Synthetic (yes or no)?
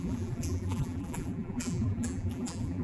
yes